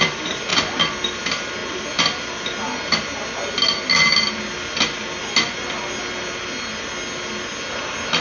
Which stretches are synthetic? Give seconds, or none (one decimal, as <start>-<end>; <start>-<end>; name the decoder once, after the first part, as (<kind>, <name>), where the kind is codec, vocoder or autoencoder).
none